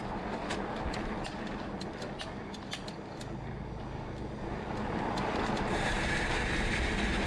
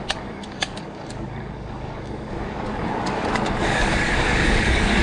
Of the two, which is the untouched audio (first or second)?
first